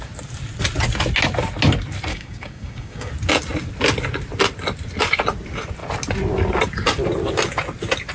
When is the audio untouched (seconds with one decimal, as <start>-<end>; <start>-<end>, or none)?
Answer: 0.0-2.1; 3.1-8.1